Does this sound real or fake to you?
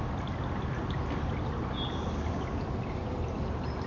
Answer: real